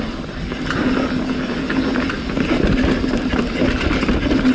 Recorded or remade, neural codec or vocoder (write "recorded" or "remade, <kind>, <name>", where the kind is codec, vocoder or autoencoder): recorded